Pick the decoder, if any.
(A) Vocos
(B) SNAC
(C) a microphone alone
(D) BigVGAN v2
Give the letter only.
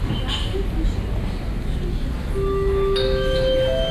C